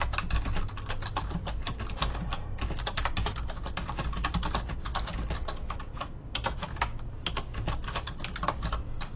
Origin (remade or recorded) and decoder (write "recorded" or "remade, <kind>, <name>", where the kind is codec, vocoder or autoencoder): recorded